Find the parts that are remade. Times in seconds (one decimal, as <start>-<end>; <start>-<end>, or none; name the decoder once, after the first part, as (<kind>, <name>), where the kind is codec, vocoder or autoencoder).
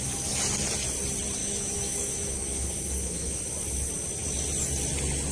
1.4-3.4 (autoencoder, DAC-VAE)